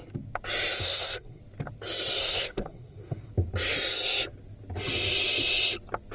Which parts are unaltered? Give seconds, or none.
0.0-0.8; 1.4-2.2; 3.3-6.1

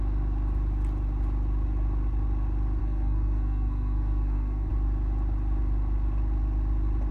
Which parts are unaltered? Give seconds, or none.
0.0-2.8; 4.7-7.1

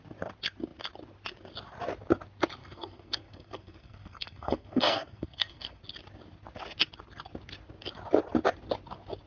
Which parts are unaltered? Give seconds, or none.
0.0-2.6; 5.8-9.3

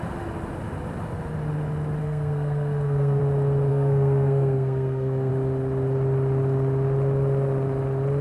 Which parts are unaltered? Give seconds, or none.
0.0-2.0; 3.2-3.7; 5.3-8.2

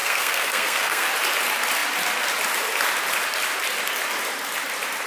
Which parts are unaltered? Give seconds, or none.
1.1-5.1

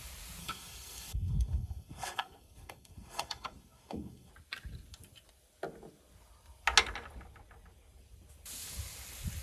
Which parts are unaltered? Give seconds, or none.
0.0-0.4; 4.3-9.4

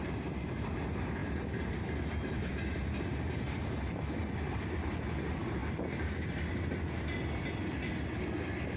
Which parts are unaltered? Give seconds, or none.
0.0-8.8

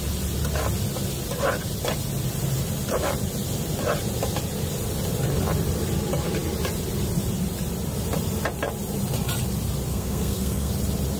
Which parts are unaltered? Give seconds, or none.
0.0-9.9; 10.7-11.2